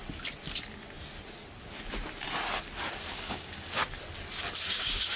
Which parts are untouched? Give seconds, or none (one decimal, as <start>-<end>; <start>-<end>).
0.0-3.1; 3.8-4.7